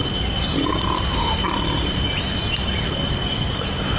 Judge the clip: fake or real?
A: real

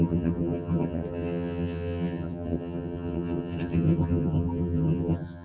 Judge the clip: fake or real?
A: fake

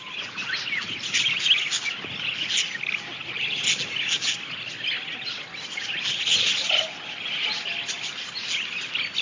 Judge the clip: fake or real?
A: real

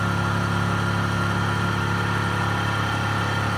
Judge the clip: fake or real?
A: real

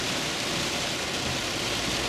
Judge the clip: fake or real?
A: real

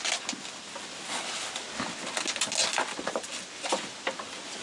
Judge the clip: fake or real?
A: real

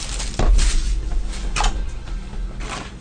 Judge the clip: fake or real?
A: real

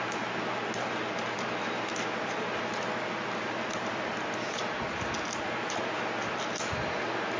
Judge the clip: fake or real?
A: real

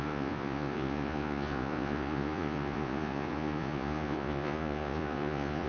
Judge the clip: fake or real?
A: fake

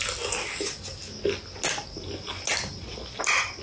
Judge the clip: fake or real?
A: real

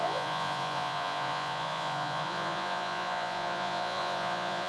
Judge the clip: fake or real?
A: fake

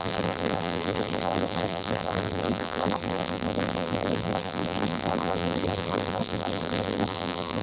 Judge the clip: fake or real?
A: fake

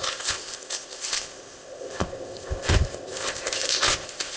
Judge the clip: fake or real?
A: fake